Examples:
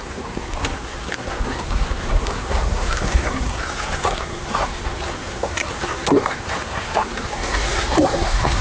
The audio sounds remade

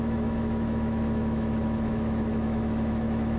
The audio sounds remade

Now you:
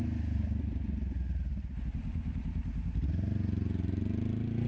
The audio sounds recorded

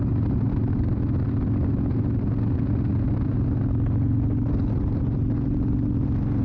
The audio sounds recorded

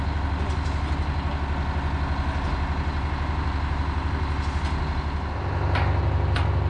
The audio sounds recorded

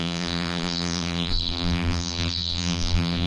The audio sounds remade